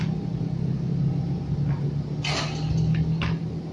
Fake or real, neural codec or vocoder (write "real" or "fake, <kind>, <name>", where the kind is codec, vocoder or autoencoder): real